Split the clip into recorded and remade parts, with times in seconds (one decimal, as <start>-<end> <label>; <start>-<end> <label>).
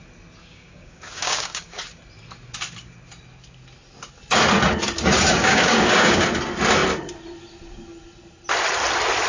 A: 0.0-0.4 recorded; 0.4-1.8 remade; 1.8-5.4 recorded; 5.4-6.2 remade; 6.2-9.3 recorded